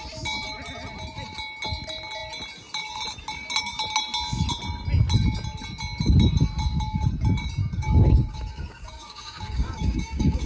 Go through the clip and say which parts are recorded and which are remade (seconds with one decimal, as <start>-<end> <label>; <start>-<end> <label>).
0.0-7.6 recorded; 7.6-10.5 remade